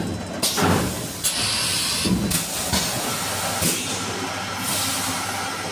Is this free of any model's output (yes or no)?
yes